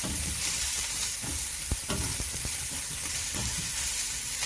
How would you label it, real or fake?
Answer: fake